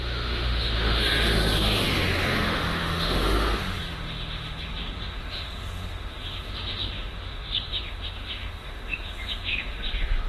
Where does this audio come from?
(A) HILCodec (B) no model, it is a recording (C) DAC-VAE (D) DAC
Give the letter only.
C